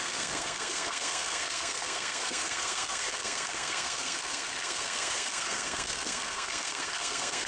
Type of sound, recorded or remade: remade